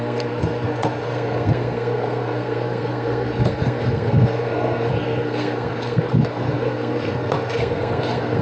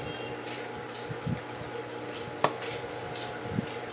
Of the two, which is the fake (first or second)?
first